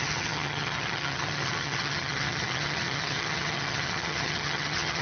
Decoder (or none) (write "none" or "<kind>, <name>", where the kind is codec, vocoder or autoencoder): vocoder, HiFi-GAN